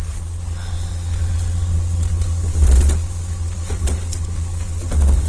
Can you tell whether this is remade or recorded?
remade